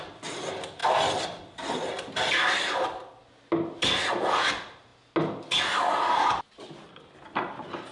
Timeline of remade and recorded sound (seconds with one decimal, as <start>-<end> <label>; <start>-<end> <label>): 0.0-7.9 recorded